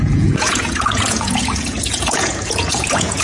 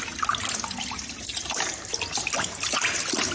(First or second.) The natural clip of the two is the second